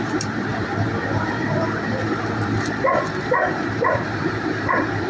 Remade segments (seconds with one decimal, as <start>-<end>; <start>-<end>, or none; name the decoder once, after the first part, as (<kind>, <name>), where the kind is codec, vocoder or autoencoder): 0.0-5.1 (vocoder, BigVGAN v2)